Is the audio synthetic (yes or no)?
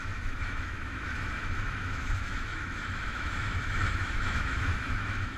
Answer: yes